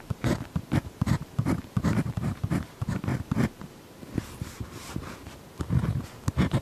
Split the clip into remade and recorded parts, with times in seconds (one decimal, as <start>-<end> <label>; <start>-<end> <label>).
0.0-3.1 remade; 3.1-4.7 recorded; 4.7-6.6 remade